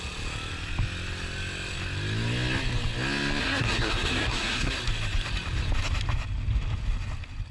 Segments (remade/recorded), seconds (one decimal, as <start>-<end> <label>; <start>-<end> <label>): 0.0-3.4 recorded; 3.4-4.7 remade; 4.7-7.5 recorded